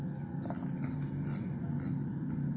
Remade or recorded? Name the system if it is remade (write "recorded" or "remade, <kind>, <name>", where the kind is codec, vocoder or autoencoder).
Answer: recorded